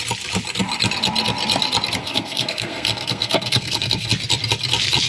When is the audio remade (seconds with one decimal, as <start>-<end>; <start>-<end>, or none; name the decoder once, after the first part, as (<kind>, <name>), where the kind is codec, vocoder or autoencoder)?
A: 2.0-4.1 (codec, SNAC)